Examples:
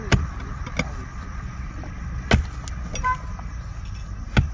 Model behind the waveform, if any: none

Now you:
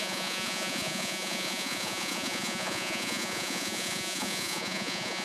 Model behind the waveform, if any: vocoder, Vocos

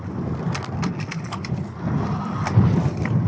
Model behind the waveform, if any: none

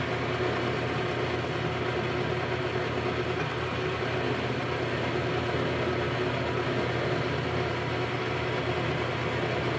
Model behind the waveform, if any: none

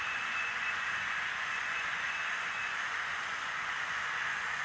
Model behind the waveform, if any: vocoder, Vocos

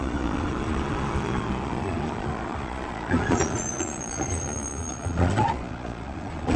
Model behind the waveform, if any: vocoder, Vocos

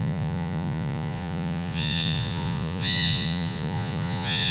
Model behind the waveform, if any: vocoder, Vocos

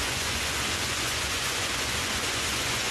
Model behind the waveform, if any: vocoder, Vocos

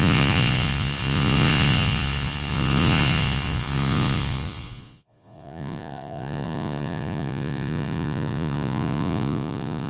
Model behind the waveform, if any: vocoder, Vocos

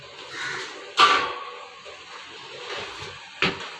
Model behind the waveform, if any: none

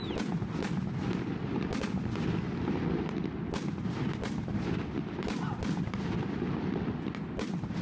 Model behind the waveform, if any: none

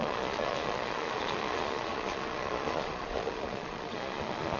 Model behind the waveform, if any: vocoder, Vocos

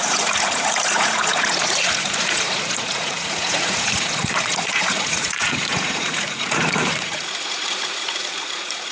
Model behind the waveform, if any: vocoder, Vocos